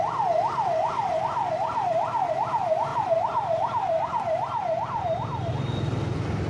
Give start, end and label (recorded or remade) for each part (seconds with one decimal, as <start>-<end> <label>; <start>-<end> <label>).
0.0-0.5 recorded; 0.5-2.0 remade; 2.0-2.9 recorded; 2.9-5.5 remade; 5.5-6.5 recorded